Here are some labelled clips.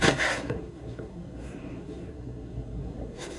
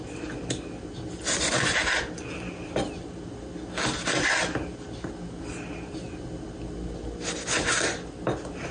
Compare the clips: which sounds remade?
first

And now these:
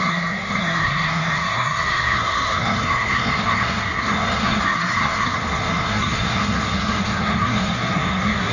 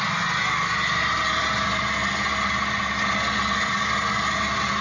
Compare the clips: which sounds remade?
first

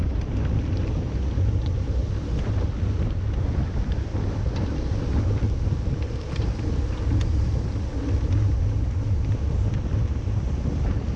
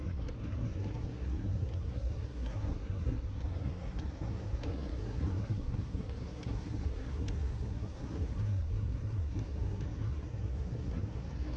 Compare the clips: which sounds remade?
second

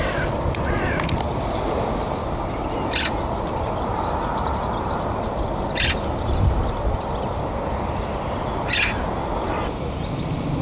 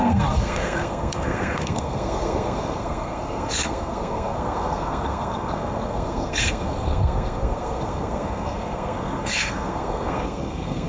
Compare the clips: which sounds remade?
second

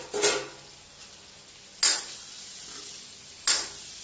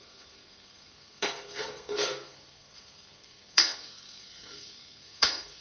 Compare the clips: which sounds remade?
second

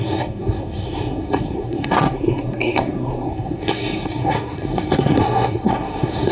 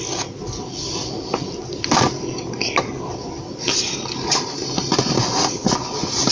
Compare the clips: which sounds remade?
first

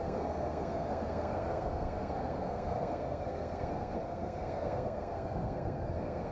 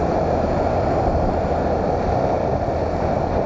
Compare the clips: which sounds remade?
first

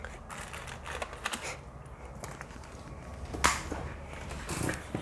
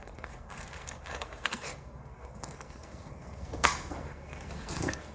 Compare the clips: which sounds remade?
second